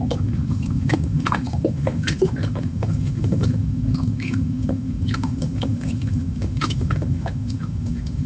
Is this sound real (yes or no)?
no